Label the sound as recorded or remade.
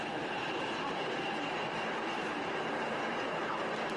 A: remade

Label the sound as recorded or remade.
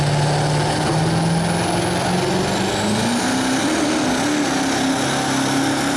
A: recorded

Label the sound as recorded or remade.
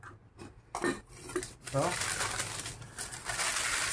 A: recorded